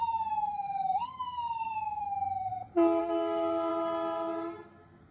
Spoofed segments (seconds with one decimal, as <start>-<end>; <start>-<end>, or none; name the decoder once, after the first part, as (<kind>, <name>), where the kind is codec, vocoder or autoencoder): 0.0-2.5 (codec, DAC); 3.0-3.7